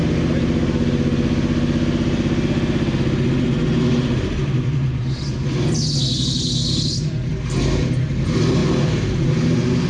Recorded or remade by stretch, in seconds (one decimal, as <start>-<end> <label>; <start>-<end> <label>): 0.0-9.9 recorded